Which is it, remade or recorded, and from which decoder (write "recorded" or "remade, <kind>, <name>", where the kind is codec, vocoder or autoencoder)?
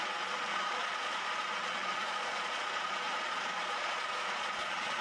remade, vocoder, Vocos